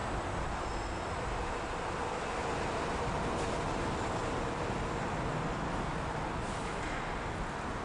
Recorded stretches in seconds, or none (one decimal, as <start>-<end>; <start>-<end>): 0.0-7.8